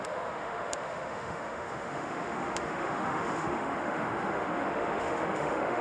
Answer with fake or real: fake